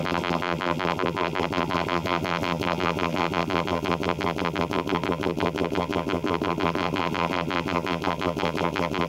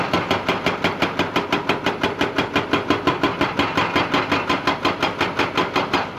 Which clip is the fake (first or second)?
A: first